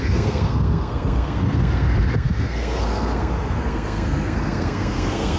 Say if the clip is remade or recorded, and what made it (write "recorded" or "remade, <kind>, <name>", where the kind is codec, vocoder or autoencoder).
remade, codec, SNAC